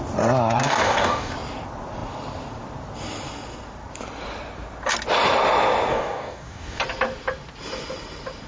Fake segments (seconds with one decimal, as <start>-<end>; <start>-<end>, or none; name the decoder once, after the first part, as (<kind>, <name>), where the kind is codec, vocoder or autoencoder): 0.6-1.3 (codec, DAC); 5.9-6.8